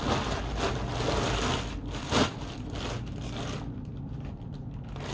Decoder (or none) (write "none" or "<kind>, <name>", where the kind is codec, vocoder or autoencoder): none